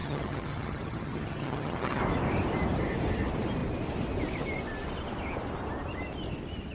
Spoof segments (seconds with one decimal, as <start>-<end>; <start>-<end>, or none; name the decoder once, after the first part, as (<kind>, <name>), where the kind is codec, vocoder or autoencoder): 0.0-2.0 (vocoder, HiFi-GAN)